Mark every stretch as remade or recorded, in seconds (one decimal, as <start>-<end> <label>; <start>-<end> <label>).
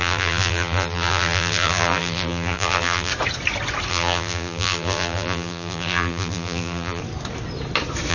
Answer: 0.0-3.1 remade; 3.1-3.9 recorded; 3.9-7.0 remade; 7.0-8.1 recorded